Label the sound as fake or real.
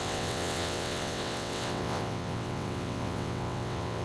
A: fake